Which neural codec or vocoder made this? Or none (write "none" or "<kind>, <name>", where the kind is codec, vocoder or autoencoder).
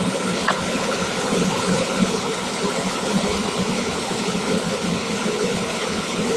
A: codec, HILCodec